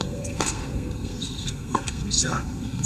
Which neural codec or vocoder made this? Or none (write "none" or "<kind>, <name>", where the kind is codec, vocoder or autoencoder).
codec, SNAC